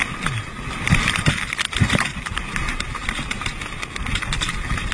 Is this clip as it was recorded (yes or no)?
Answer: yes